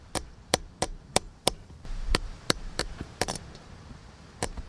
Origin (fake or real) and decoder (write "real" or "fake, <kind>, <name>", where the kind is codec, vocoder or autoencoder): fake, vocoder, BigVGAN v2